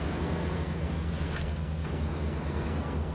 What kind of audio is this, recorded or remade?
remade